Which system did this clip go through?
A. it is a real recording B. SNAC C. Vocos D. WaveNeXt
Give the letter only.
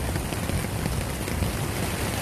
A